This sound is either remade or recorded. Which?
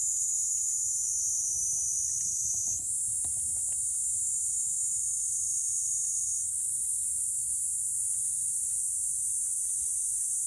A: recorded